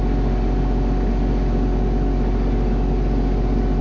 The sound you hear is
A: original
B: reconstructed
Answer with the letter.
A